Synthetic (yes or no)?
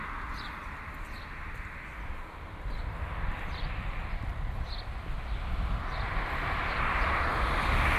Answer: no